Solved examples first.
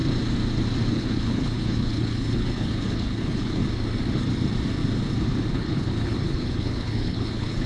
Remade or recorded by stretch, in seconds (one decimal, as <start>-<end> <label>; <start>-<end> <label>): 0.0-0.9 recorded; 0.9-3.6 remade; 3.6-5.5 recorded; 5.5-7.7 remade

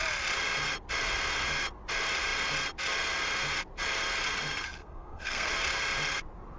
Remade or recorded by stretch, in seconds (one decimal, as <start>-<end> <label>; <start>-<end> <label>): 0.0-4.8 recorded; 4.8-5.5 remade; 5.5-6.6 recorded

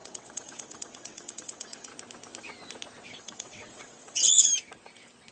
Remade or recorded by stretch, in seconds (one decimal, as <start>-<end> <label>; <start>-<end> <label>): 0.0-1.9 remade; 1.9-3.1 recorded; 3.1-4.5 remade; 4.5-5.3 recorded

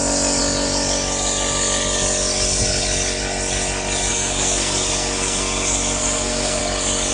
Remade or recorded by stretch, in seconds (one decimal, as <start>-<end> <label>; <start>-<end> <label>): 0.0-4.1 recorded; 4.1-6.6 remade; 6.6-7.1 recorded